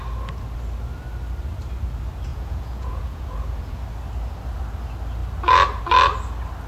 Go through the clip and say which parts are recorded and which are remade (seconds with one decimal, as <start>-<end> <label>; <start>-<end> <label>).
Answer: 0.0-2.3 recorded; 2.3-3.8 remade; 3.8-6.7 recorded